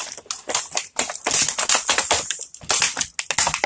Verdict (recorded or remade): recorded